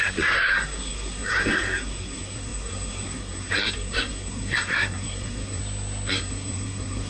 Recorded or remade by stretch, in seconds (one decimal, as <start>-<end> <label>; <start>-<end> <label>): 0.0-5.6 remade; 5.6-6.1 recorded; 6.1-7.1 remade